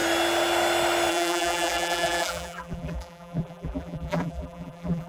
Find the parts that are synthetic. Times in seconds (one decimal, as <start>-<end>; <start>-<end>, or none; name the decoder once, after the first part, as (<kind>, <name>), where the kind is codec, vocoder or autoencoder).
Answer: 1.1-5.1 (vocoder, BigVGAN v2)